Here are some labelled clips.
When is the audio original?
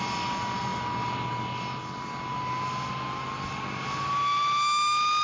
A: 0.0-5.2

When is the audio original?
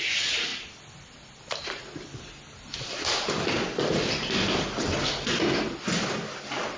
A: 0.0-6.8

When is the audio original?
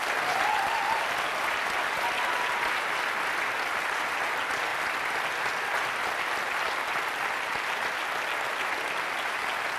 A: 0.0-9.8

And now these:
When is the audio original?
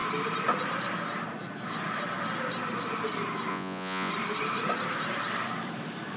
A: 0.0-3.5; 4.1-6.2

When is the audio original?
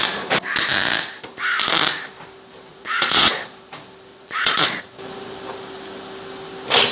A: 0.0-2.7; 3.4-4.1; 4.8-6.9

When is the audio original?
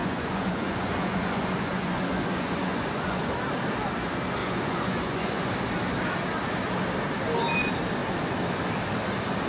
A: 3.3-4.4; 5.4-9.5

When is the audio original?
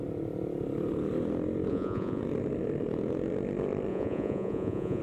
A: 0.0-1.7; 2.2-3.9